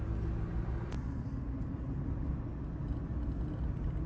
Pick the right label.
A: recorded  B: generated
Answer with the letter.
A